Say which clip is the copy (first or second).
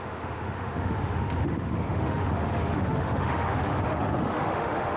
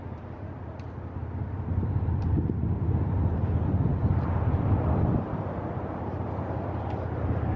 first